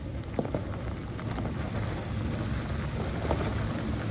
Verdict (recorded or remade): recorded